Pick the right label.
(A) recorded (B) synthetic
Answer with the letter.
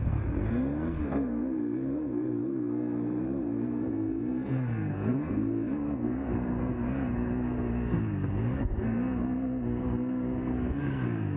B